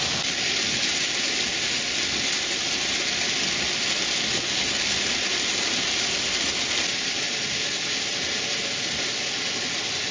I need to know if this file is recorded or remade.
recorded